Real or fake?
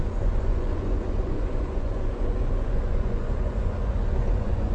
fake